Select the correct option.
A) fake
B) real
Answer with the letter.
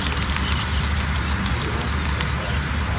B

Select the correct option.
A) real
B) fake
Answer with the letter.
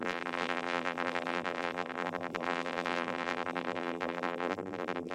B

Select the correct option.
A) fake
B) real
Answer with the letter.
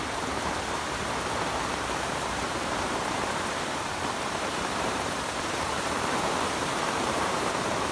A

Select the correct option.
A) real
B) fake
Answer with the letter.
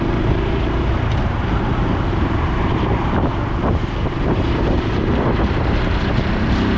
B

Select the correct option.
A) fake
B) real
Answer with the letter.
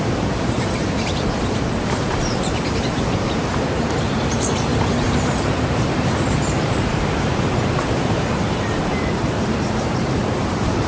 A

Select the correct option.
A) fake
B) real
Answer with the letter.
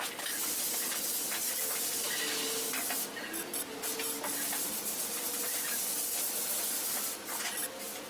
B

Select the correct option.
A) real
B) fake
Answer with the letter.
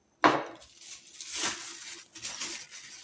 A